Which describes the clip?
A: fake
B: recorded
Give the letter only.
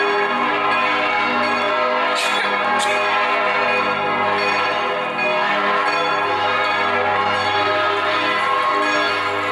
B